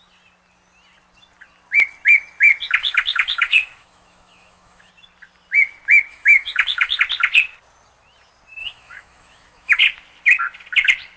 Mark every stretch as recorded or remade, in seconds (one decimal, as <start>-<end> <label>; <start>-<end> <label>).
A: 0.0-2.8 recorded; 2.8-4.9 remade; 4.9-6.1 recorded; 6.1-7.0 remade; 7.0-8.6 recorded; 8.6-9.8 remade; 9.8-11.2 recorded